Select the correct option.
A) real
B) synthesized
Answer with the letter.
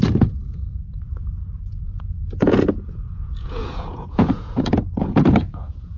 B